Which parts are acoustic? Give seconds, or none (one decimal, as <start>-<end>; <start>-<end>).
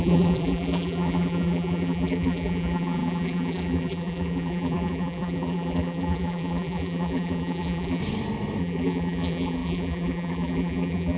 8.0-8.6